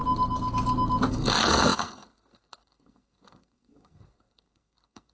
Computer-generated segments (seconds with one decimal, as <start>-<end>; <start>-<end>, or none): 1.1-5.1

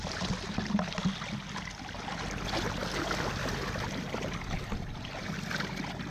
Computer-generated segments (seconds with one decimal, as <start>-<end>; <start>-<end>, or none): none

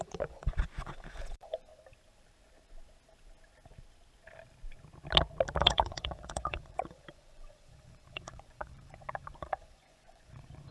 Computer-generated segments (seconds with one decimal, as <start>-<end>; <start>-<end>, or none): 0.0-1.7; 5.6-10.7

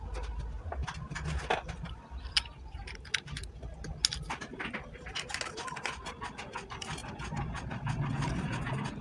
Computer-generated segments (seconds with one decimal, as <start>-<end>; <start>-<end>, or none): 0.8-2.6

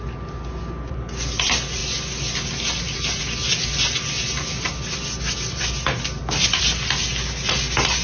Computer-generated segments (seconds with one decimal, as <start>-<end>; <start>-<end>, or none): none

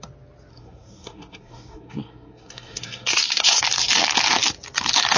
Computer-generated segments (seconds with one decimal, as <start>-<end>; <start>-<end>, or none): 0.5-3.6

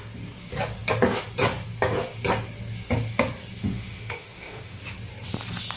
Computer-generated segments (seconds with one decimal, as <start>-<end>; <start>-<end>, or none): 3.6-4.8